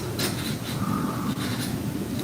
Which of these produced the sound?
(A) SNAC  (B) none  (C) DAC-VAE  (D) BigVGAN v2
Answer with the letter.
B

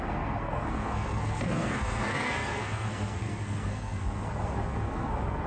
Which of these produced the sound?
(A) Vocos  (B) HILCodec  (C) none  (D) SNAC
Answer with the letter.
D